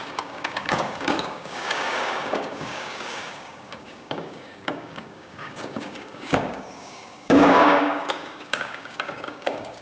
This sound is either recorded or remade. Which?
remade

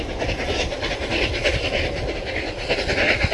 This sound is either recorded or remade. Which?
recorded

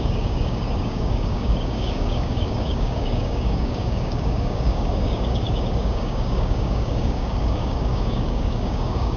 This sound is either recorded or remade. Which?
remade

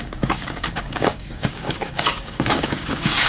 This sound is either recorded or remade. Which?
remade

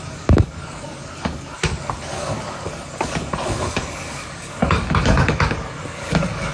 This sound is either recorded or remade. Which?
remade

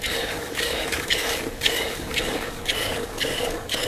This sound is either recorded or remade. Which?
remade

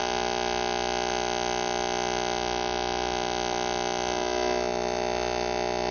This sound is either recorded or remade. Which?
recorded